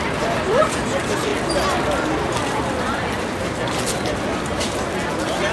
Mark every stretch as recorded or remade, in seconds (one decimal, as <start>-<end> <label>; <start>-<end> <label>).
0.0-1.3 remade; 1.3-2.8 recorded; 2.8-5.5 remade